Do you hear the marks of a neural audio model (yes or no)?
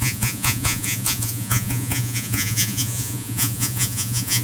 yes